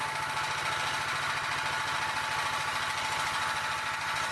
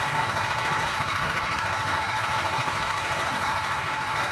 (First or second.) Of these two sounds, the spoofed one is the second